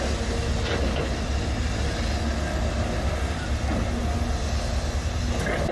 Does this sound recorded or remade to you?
recorded